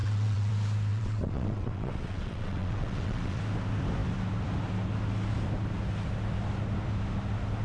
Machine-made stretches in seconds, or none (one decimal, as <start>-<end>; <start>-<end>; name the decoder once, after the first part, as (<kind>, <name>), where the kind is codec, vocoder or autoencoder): 0.0-0.5 (vocoder, WaveNeXt); 0.9-3.4